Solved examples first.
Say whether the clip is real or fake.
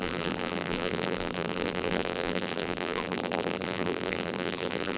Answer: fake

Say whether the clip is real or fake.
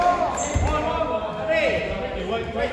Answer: real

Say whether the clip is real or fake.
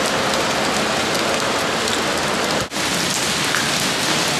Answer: real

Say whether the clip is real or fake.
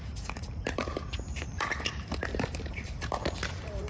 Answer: fake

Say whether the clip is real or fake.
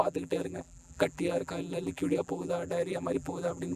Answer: fake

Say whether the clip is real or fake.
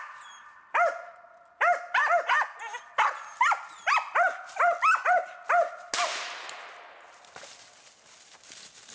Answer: real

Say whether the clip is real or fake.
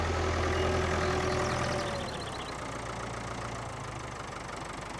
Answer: real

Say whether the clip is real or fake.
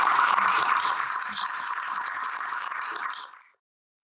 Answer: fake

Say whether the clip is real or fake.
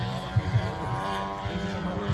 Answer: fake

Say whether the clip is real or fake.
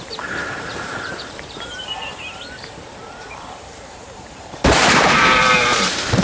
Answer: fake